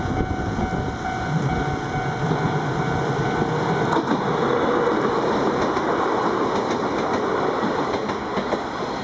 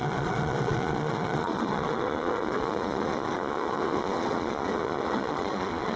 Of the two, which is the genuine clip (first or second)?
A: first